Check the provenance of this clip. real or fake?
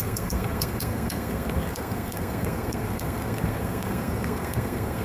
fake